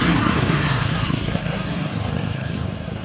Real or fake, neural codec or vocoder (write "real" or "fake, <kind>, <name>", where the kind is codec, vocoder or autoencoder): fake, codec, SNAC